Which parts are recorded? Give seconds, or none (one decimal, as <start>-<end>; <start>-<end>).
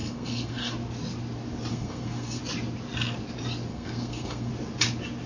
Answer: 0.7-1.7; 2.4-3.7; 4.5-5.3